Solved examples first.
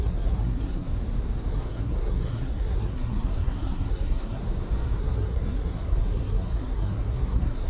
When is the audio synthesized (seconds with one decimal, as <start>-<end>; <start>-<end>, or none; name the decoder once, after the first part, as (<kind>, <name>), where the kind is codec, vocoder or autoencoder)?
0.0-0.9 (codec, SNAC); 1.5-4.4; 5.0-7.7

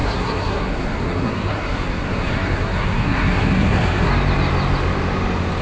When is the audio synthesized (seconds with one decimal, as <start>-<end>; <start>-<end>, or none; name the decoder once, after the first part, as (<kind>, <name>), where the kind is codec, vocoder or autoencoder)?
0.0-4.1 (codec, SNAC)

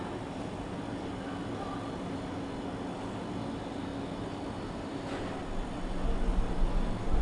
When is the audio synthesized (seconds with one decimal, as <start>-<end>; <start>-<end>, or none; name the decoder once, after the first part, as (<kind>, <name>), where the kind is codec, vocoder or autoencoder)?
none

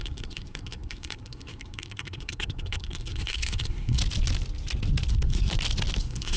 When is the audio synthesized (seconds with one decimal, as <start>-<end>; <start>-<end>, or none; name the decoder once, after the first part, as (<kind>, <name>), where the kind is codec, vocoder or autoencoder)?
0.0-4.0 (codec, SNAC); 5.1-5.5; 6.0-6.4